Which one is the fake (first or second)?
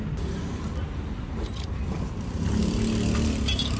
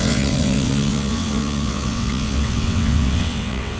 second